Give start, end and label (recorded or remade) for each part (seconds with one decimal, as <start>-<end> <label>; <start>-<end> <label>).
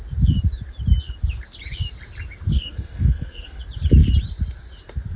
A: 0.0-2.5 recorded; 2.5-3.6 remade; 3.6-5.2 recorded